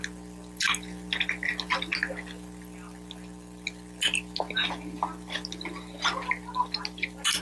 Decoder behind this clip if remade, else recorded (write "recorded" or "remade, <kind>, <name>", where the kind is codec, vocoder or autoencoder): recorded